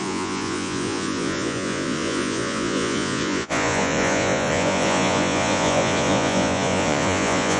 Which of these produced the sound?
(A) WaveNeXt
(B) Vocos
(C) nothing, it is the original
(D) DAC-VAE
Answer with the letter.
B